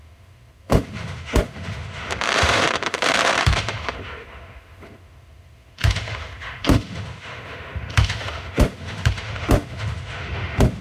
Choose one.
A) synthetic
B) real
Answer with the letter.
A